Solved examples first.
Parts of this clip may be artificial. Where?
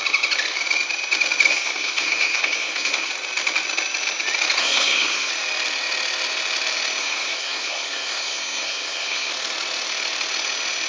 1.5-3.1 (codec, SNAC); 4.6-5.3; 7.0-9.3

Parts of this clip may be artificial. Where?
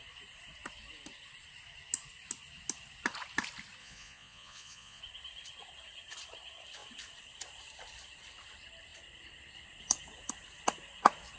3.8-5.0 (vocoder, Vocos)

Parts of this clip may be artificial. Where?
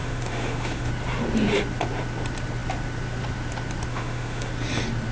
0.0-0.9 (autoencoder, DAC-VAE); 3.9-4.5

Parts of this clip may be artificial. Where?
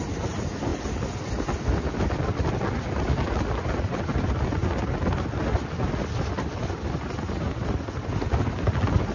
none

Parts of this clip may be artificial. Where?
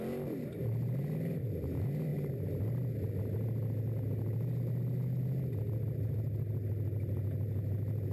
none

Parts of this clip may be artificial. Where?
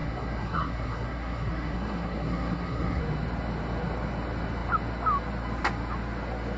0.0-3.0 (codec, SNAC)